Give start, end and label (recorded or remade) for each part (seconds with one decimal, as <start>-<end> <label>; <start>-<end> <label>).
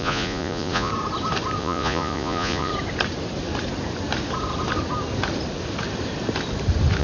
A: 0.0-0.9 remade; 0.9-1.6 recorded; 1.6-2.7 remade; 2.7-7.0 recorded